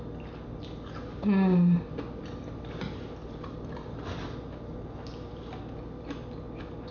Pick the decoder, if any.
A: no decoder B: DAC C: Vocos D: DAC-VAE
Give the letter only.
A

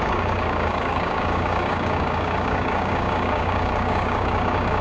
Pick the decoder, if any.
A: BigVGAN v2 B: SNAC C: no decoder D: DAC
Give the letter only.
D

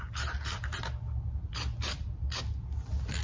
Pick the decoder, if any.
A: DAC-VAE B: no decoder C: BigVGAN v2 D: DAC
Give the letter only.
B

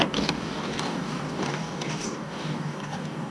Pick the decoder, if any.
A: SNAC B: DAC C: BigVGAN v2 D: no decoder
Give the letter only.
B